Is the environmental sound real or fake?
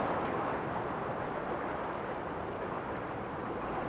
real